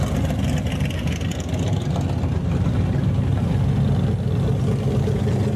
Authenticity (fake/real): real